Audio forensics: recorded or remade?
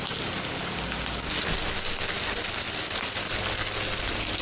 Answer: recorded